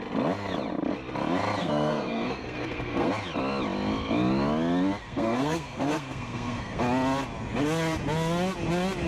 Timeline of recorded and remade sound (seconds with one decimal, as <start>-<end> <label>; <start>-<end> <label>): 0.0-1.6 recorded; 1.6-3.1 remade; 3.1-5.0 recorded; 5.0-6.8 remade; 6.8-9.1 recorded

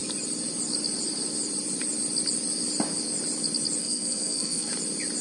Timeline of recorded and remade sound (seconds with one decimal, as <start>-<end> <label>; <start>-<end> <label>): 0.0-3.8 recorded; 3.8-4.7 remade; 4.7-5.2 recorded